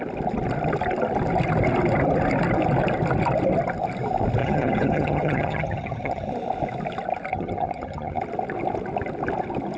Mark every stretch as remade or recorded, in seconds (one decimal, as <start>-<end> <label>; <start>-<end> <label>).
0.0-4.4 recorded; 4.4-6.3 remade; 6.3-7.3 recorded; 7.3-8.2 remade; 8.2-9.8 recorded